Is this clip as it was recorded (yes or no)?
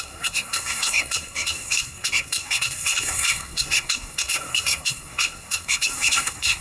no